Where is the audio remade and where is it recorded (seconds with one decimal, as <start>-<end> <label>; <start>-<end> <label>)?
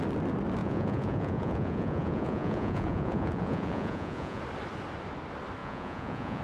0.0-0.6 recorded; 0.6-4.4 remade; 4.4-5.6 recorded; 5.6-6.4 remade